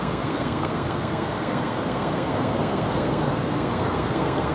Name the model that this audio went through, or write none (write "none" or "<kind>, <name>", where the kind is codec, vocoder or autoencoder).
codec, SNAC